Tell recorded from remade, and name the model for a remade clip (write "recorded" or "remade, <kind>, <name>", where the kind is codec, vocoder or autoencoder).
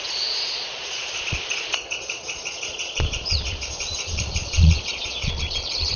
remade, vocoder, Vocos